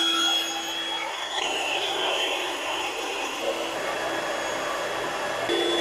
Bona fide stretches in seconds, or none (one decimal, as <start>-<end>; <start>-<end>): 0.0-1.1; 3.4-5.8